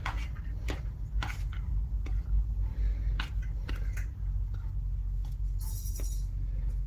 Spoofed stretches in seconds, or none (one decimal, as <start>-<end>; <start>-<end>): none